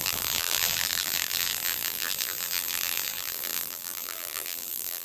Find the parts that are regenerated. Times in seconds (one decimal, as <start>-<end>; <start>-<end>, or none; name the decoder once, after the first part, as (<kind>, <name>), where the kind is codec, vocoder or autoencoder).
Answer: 0.0-5.0 (vocoder, BigVGAN v2)